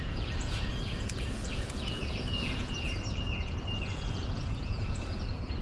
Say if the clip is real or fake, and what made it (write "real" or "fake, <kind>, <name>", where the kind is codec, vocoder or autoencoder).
fake, vocoder, Vocos